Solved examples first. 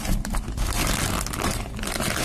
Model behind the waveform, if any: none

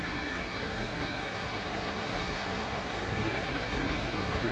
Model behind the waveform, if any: codec, SNAC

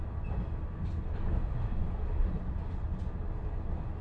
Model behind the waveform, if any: none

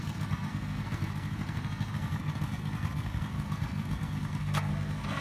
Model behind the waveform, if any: codec, SNAC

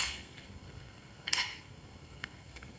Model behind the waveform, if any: codec, SNAC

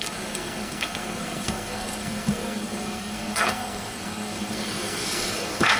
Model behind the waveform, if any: codec, SNAC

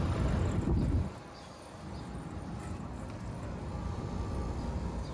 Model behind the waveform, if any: none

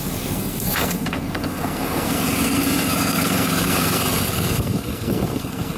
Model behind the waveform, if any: codec, SNAC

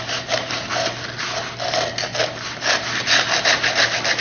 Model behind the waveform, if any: none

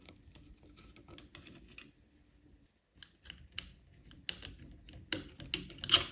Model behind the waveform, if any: none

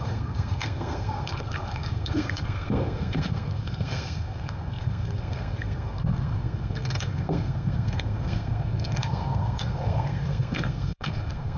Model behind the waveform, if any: codec, SNAC